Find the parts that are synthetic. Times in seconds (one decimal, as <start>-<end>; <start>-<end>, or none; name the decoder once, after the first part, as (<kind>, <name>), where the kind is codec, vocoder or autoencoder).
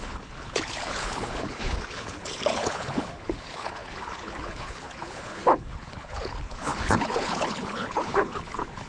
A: 0.0-8.9 (codec, HILCodec)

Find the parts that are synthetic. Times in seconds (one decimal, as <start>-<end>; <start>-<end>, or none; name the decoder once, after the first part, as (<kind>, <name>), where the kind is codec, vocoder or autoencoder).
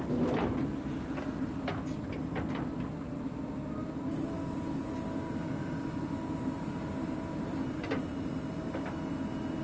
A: none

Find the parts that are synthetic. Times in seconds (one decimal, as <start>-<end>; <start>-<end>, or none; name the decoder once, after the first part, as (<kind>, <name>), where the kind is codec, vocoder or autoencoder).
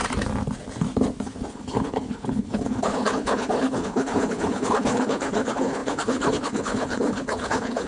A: 1.5-7.9 (codec, HILCodec)